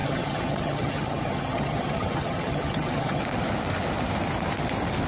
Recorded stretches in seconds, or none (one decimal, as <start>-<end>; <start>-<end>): 3.2-5.1